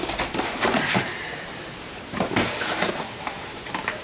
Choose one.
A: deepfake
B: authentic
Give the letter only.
A